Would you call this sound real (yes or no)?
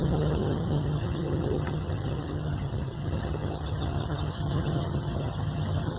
no